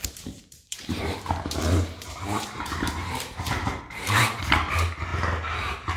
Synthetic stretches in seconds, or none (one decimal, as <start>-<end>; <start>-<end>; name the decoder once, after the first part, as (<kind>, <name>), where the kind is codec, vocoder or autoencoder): 0.0-6.0 (vocoder, BigVGAN v2)